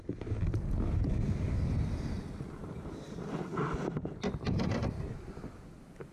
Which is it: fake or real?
real